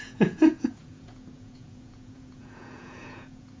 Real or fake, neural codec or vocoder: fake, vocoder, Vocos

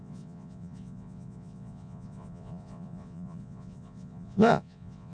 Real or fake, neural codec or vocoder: fake, vocoder, Vocos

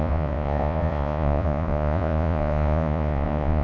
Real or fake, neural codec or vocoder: fake, vocoder, Vocos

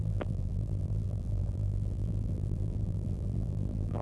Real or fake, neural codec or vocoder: fake, vocoder, BigVGAN v2